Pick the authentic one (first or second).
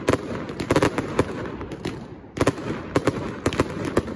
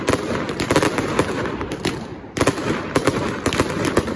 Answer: first